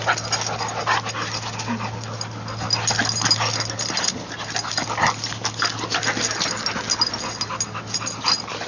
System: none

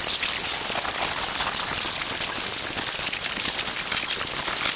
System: none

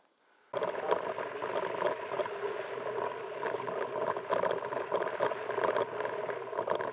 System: none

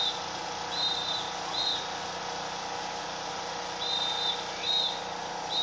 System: none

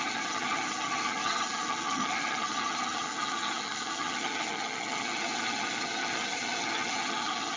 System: vocoder, HiFi-GAN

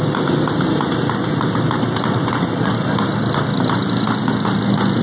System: none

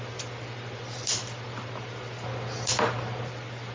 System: none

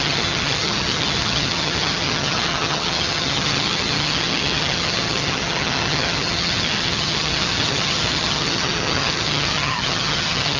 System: vocoder, HiFi-GAN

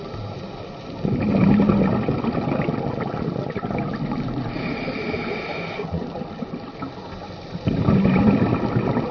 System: none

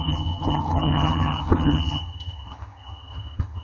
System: vocoder, HiFi-GAN